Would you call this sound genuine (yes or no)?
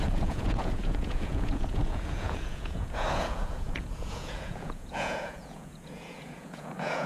no